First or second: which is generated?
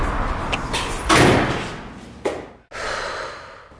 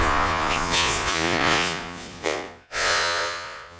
second